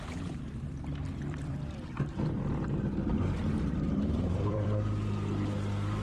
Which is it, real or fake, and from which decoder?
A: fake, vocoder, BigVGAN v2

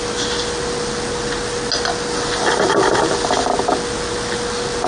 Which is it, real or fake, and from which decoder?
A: real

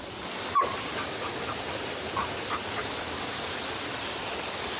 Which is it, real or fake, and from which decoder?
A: real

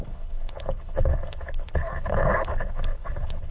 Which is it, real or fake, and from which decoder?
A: fake, codec, HILCodec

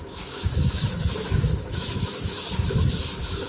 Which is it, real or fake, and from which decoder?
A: fake, autoencoder, DAC-VAE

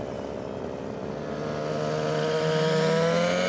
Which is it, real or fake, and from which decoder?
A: real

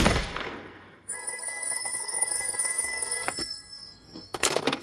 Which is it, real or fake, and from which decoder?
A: fake, codec, SNAC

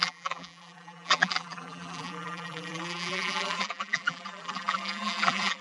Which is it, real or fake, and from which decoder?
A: fake, vocoder, BigVGAN v2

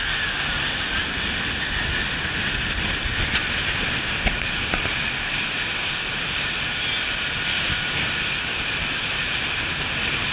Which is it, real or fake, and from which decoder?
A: real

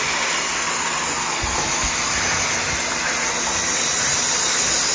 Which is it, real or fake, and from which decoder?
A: real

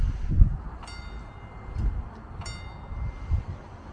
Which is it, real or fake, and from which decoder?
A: real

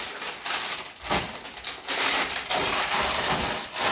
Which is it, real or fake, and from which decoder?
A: real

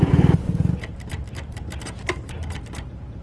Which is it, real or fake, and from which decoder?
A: fake, vocoder, BigVGAN v2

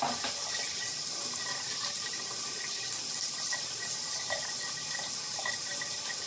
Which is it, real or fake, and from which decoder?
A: real